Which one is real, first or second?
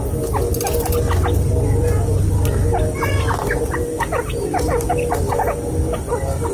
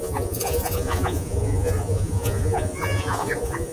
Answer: first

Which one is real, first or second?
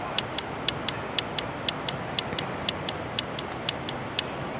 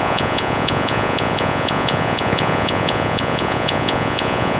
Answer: first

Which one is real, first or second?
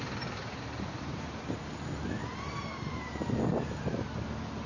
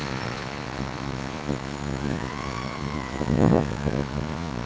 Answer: first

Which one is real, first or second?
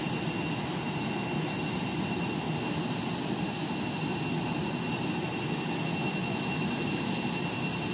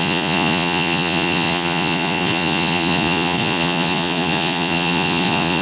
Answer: first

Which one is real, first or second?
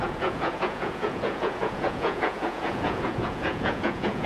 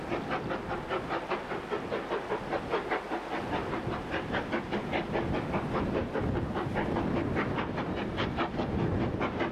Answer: second